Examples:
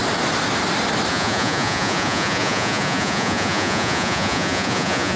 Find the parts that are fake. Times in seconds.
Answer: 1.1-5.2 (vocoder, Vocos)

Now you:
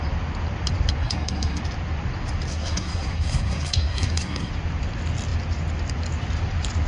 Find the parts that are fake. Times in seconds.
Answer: 1.0-1.6 (codec, SNAC); 2.5-4.5